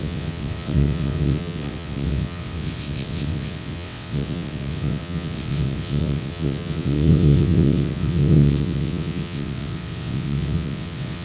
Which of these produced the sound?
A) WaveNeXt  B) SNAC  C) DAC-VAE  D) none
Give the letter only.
A